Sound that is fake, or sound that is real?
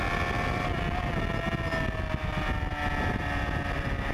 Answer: real